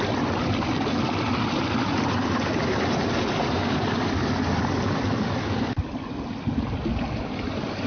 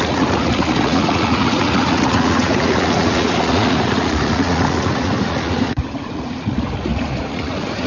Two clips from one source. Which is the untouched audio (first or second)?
first